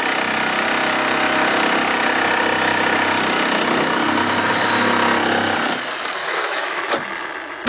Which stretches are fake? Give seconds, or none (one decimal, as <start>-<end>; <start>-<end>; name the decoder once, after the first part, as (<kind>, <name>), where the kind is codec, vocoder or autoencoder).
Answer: 6.2-6.8 (autoencoder, DAC-VAE)

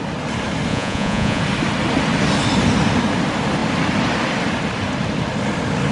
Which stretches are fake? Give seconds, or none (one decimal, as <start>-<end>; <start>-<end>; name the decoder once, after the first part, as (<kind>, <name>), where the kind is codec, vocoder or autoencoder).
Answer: 0.7-1.4 (vocoder, Vocos)

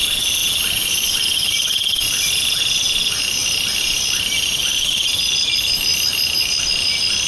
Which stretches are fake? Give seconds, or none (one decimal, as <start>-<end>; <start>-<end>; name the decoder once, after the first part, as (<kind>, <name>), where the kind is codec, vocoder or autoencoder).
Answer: none

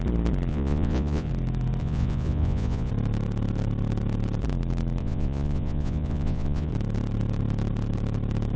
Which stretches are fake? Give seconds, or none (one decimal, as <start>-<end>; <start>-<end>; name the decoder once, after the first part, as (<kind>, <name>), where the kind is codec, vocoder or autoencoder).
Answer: 0.5-1.3 (vocoder, Vocos); 1.8-2.9; 5.0-6.7

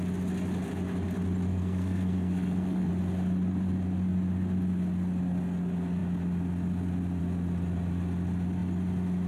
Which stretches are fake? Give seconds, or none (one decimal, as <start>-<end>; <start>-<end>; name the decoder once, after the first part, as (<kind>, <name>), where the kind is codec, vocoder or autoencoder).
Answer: 1.5-2.9 (codec, SNAC)